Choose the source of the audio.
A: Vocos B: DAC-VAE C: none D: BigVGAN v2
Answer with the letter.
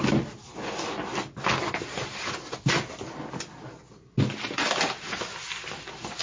C